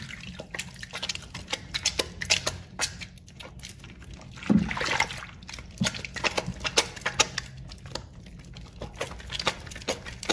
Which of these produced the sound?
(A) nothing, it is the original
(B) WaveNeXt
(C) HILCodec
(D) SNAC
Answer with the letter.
A